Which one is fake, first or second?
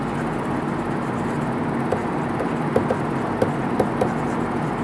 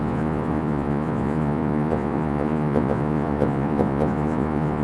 second